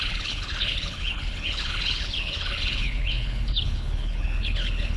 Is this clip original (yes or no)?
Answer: no